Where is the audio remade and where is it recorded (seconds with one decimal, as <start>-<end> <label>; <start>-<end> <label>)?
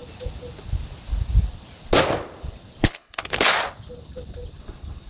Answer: 0.0-2.8 recorded; 2.8-3.5 remade; 3.5-4.6 recorded; 4.6-5.1 remade